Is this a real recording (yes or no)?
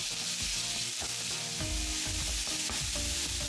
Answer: yes